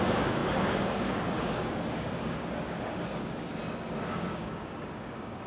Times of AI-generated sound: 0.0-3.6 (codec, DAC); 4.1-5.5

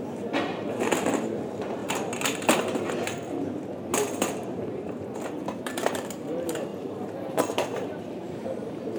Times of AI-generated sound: 0.0-1.8 (vocoder, BigVGAN v2); 5.6-9.0

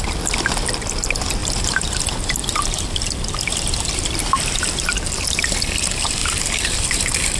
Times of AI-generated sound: 0.0-6.2 (vocoder, BigVGAN v2); 6.9-7.4

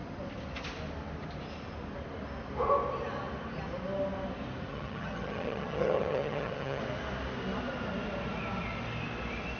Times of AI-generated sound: 4.7-6.8 (vocoder, HiFi-GAN)

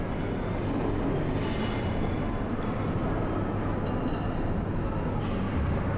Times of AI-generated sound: none

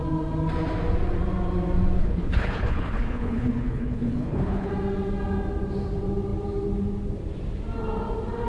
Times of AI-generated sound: 2.0-4.7 (codec, HILCodec)